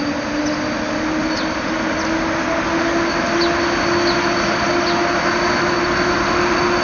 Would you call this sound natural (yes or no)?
yes